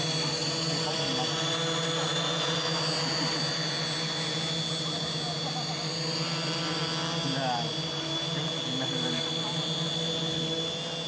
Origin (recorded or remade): recorded